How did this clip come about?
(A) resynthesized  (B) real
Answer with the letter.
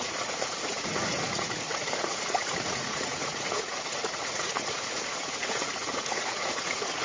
A